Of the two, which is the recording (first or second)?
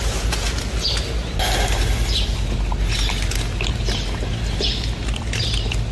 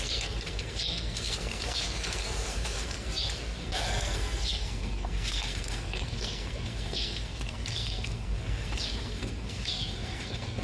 first